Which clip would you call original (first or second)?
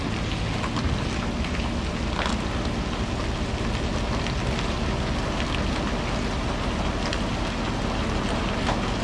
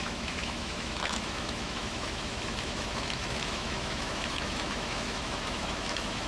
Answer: first